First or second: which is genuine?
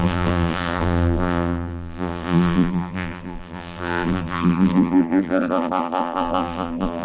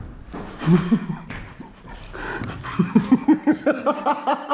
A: second